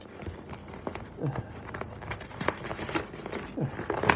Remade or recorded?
recorded